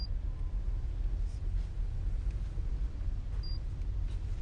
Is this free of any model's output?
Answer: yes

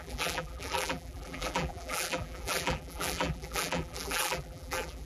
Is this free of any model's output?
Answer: no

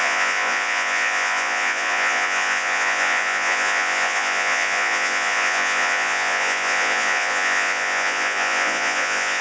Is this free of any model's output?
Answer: no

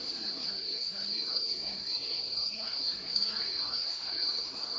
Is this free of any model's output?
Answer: no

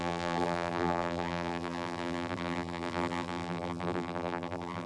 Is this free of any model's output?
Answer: no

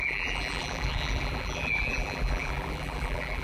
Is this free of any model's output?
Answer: no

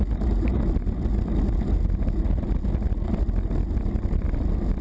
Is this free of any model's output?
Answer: yes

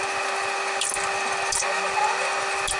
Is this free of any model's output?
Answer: yes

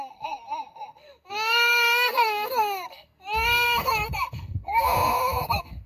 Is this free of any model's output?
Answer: no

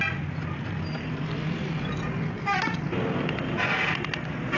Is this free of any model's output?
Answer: yes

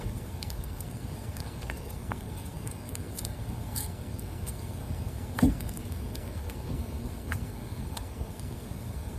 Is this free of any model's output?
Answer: no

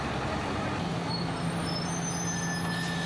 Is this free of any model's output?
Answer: yes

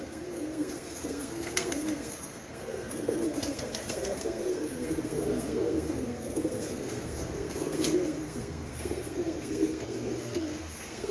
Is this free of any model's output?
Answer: no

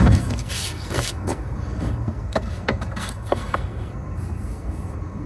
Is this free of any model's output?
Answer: no